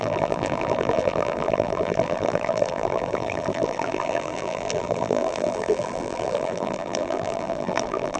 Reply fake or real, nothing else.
fake